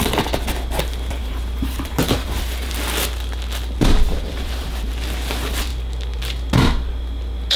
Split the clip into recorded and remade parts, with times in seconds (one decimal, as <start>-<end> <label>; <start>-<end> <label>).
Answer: 0.0-1.2 recorded; 1.2-2.7 remade; 2.7-4.1 recorded; 4.1-4.9 remade; 4.9-7.6 recorded